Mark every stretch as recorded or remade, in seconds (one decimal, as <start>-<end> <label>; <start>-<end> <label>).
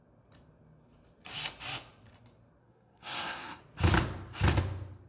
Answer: 0.0-2.6 recorded; 2.6-3.6 remade; 3.6-5.1 recorded